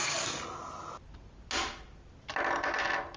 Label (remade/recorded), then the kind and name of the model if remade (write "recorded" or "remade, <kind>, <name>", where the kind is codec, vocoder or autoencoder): recorded